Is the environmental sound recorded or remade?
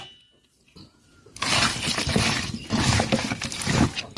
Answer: recorded